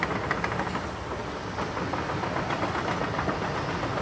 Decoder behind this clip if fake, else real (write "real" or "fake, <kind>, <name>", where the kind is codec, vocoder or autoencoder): real